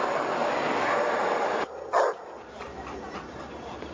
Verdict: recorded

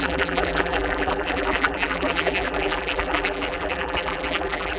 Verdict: remade